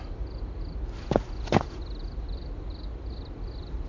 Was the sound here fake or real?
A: real